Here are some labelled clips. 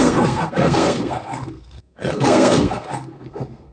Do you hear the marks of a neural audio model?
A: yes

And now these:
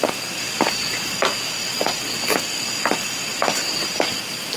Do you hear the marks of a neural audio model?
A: no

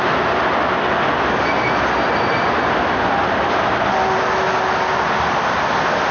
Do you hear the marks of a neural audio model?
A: no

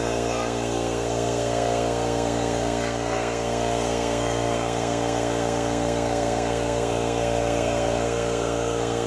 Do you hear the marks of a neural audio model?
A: yes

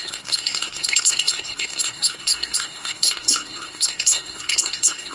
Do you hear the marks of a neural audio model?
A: yes